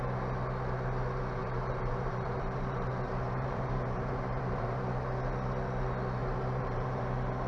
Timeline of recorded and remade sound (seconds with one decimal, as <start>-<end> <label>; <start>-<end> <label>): 0.0-1.4 recorded; 1.4-4.9 remade; 4.9-6.2 recorded; 6.2-7.0 remade; 7.0-7.5 recorded